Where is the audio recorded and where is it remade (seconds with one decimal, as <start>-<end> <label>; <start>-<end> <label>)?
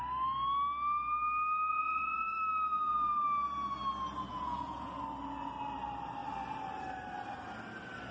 0.0-1.7 recorded; 1.7-2.4 remade; 2.4-4.3 recorded; 4.3-5.0 remade; 5.0-8.1 recorded